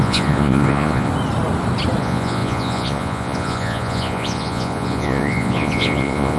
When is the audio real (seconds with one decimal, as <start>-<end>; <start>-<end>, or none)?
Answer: 1.1-2.0